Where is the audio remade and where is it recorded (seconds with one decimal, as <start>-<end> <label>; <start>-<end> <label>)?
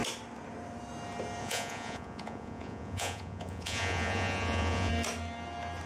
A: 0.0-1.4 recorded; 1.4-4.9 remade; 4.9-5.9 recorded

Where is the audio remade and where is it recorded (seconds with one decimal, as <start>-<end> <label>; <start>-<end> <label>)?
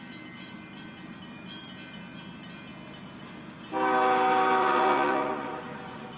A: 0.0-4.6 recorded; 4.6-6.2 remade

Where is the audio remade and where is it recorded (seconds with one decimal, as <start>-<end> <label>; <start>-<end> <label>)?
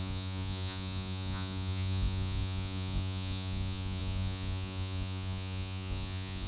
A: 0.0-6.5 remade